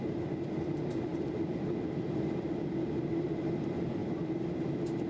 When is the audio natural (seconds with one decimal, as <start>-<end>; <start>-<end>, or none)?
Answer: 0.0-5.1